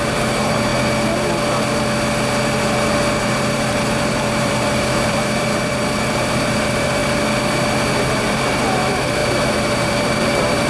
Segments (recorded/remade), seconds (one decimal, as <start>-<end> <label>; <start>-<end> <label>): 0.0-0.7 remade; 0.7-3.2 recorded; 3.2-7.0 remade; 7.0-8.1 recorded; 8.1-10.7 remade